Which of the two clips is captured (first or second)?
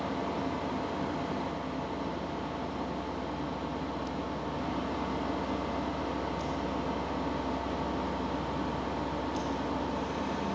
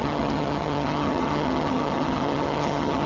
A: first